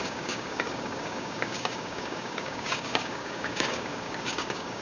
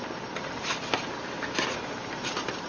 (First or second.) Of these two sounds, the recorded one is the second